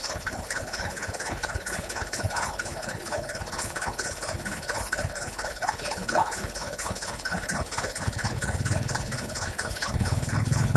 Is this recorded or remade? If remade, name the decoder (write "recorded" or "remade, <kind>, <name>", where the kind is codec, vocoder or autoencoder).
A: remade, codec, HILCodec